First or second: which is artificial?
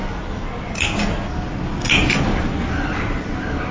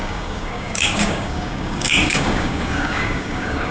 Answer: second